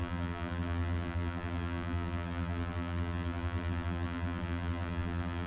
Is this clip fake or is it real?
fake